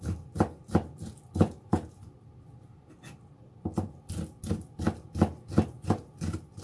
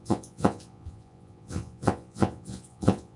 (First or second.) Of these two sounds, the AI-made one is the second